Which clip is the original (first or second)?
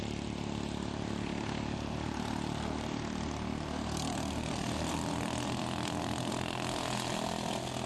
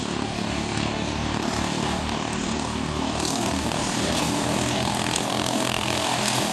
first